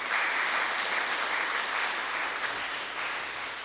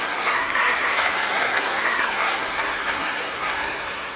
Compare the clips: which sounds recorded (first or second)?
first